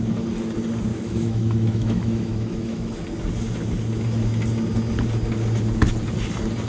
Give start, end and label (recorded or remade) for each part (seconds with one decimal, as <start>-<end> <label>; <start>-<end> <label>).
0.0-0.9 recorded; 0.9-3.0 remade; 3.0-6.7 recorded